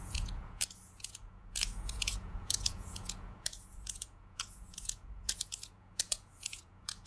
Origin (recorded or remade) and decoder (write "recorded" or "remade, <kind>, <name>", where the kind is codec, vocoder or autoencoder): remade, vocoder, Vocos